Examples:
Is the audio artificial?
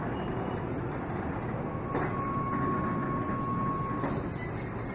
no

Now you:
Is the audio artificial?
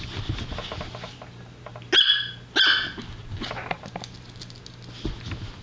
no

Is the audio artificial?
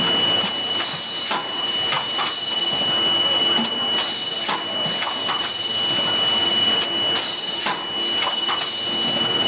no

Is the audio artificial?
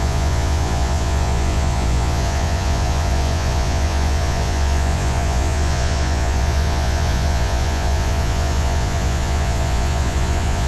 yes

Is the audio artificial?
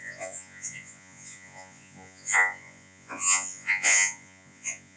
yes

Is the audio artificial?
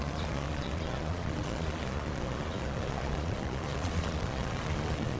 yes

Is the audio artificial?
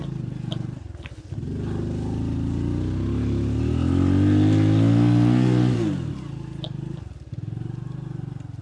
no